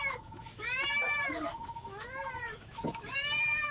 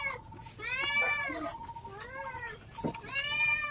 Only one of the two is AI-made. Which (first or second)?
first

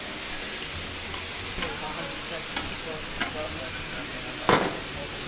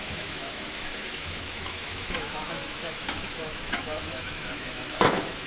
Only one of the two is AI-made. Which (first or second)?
second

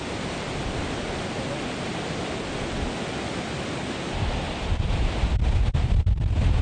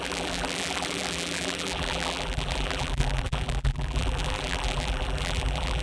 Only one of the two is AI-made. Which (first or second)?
second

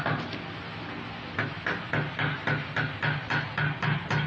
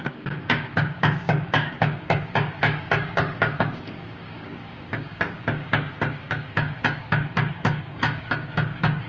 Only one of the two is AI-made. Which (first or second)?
second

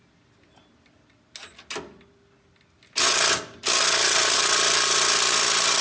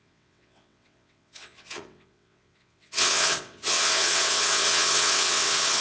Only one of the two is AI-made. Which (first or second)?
second